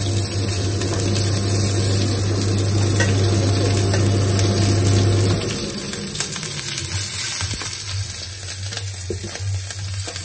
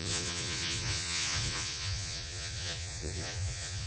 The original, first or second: first